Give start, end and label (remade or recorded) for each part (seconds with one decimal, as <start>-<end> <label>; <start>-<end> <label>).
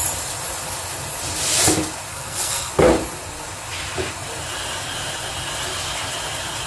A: 0.0-2.1 recorded; 2.1-2.7 remade; 2.7-6.7 recorded